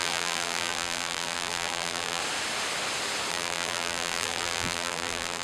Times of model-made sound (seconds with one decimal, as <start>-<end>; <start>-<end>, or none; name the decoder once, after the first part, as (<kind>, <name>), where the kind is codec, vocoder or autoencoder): 0.0-2.2 (vocoder, BigVGAN v2); 3.3-5.4